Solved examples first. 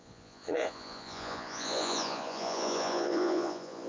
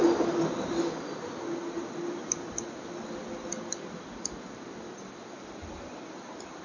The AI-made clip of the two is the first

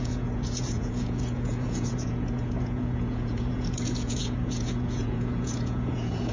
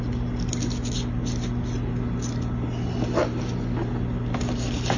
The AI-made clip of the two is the first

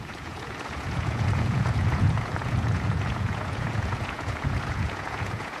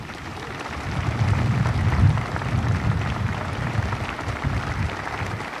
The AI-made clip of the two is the first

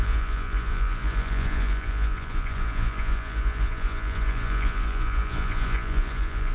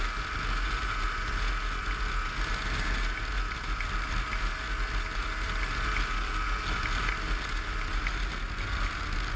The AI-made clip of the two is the first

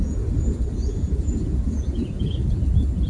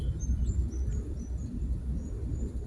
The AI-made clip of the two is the first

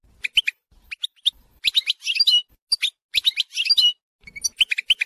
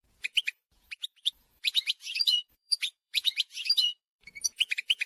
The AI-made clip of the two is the second